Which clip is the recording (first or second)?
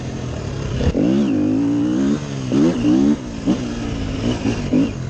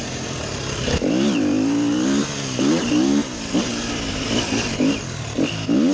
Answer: first